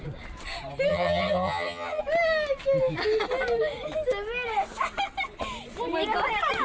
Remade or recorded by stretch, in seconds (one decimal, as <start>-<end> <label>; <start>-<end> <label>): 0.0-0.9 recorded; 0.9-2.0 remade; 2.0-6.6 recorded